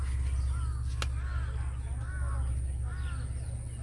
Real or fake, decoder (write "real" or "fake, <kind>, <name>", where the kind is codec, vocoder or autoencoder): real